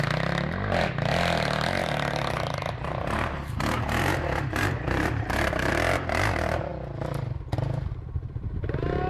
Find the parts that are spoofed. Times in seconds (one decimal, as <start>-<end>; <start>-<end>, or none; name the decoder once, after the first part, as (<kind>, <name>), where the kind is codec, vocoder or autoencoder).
1.8-5.7 (vocoder, BigVGAN v2)